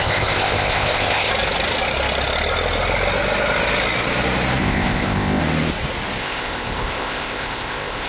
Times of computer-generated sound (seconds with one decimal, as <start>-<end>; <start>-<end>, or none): 0.0-1.3; 4.6-5.4; 6.2-8.1